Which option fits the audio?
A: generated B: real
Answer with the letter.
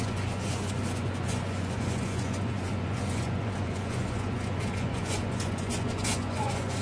A